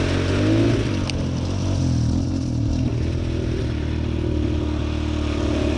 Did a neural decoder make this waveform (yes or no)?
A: no